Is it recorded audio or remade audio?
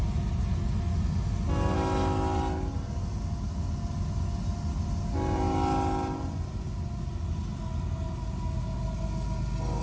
recorded